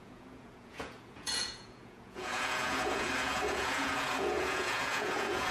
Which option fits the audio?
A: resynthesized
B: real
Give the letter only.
A